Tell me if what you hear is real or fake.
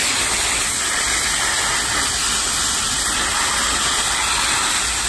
real